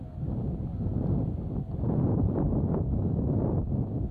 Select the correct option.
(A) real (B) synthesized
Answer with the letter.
A